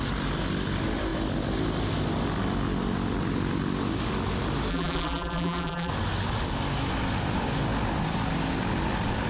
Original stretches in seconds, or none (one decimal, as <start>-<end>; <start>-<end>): 0.0-4.7; 5.9-9.3